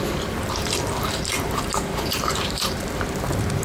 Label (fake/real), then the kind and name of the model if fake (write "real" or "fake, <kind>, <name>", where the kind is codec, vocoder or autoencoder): fake, vocoder, BigVGAN v2